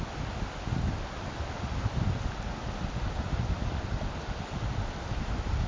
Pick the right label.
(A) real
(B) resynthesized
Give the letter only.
A